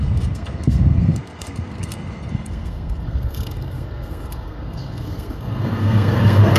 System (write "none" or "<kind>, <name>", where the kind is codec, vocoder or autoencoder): codec, SNAC